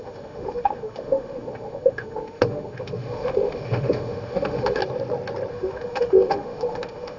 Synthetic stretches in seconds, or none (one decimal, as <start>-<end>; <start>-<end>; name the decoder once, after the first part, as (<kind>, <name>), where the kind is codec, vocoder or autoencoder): 0.0-4.8 (autoencoder, DAC-VAE); 5.5-7.2